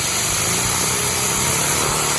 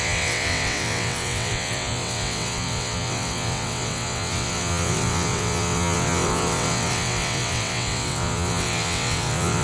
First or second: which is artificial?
second